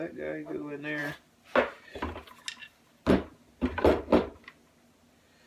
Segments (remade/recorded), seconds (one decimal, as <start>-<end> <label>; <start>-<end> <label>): 0.0-5.5 recorded